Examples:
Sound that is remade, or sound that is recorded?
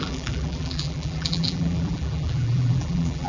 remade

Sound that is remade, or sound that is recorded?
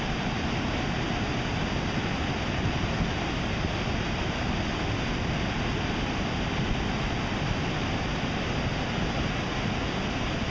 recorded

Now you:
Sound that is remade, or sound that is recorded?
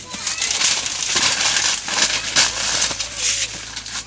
recorded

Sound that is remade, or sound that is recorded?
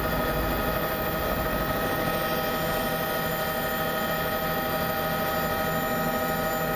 recorded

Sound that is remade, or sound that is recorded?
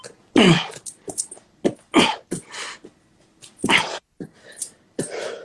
recorded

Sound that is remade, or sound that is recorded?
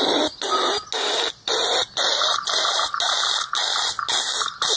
recorded